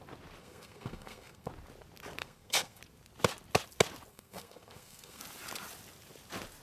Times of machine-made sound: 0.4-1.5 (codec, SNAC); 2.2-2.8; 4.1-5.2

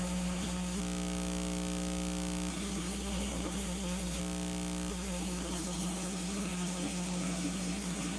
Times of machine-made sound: 0.0-0.8 (codec, SNAC); 2.5-4.2; 4.9-8.2

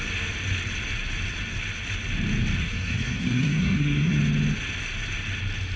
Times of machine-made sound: 2.6-4.2 (codec, SNAC)